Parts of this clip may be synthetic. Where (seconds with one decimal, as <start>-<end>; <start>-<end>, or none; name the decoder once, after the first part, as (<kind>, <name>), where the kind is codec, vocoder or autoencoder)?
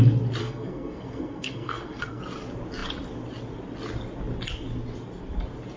0.4-2.2 (codec, SNAC)